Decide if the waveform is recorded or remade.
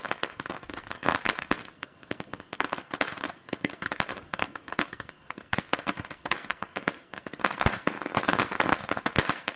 remade